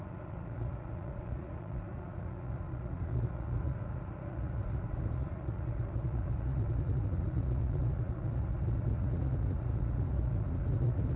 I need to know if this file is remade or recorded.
remade